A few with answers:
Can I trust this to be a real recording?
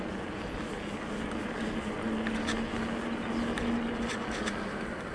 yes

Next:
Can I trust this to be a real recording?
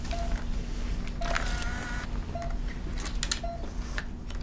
yes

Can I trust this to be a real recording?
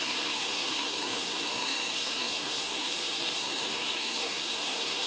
no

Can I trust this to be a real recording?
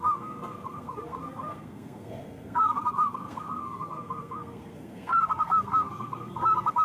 no